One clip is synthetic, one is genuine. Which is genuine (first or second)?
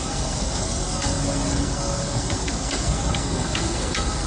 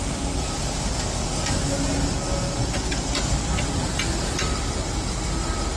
second